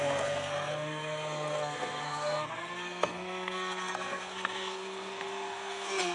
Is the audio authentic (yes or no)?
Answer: no